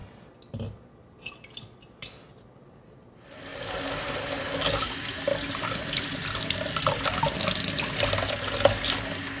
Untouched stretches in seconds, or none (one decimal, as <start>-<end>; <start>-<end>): 2.3-5.3; 7.2-9.4